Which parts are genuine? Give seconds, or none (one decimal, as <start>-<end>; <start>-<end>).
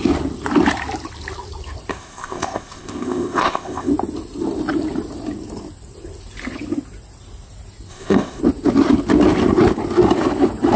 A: 0.0-1.9; 3.9-7.9; 8.4-10.8